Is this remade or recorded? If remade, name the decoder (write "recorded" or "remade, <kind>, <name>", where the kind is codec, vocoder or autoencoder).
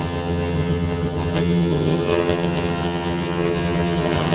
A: remade, vocoder, HiFi-GAN